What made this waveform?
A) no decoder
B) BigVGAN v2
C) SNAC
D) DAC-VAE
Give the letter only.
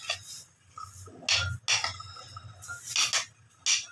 A